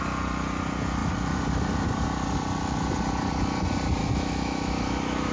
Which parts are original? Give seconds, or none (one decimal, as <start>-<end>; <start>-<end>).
0.0-4.0